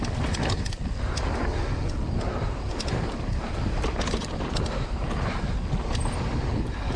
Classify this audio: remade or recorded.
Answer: recorded